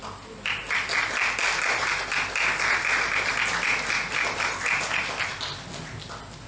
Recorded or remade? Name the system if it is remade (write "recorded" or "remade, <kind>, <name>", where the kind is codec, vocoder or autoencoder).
recorded